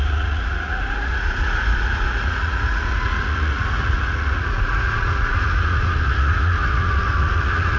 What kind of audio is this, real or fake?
fake